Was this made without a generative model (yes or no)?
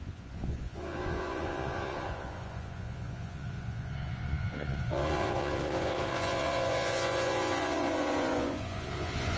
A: no